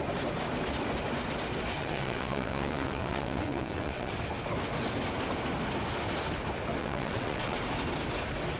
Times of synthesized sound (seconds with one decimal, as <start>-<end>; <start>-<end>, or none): 1.8-4.1; 6.8-7.6